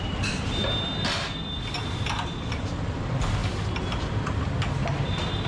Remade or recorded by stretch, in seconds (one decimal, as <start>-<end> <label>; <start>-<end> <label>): 0.0-5.5 recorded